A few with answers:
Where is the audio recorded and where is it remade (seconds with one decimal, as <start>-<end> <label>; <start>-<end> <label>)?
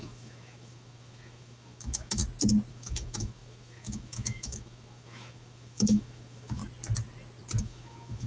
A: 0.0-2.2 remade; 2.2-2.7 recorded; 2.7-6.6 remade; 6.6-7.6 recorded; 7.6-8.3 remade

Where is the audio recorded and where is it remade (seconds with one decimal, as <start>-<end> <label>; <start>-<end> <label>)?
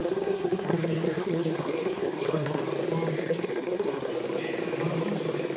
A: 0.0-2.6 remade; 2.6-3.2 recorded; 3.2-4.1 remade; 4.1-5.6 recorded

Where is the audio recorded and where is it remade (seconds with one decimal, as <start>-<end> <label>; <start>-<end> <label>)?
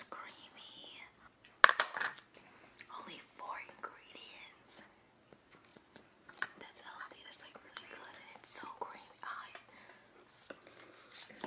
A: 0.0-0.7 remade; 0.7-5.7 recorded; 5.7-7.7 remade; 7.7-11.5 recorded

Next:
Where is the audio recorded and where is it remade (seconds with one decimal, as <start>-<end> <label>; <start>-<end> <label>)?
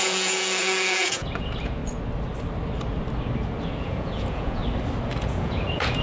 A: 0.0-1.8 remade; 1.8-3.6 recorded; 3.6-4.6 remade; 4.6-5.2 recorded; 5.2-6.0 remade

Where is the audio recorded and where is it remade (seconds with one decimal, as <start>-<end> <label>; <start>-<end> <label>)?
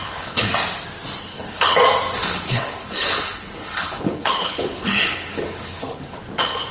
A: 0.0-0.5 remade; 0.5-1.3 recorded; 1.3-1.8 remade; 1.8-2.2 recorded; 2.2-6.2 remade; 6.2-6.7 recorded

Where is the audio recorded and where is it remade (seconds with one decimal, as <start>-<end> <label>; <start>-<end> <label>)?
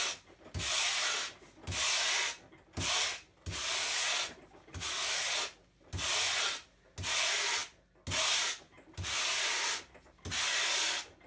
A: 0.0-11.3 recorded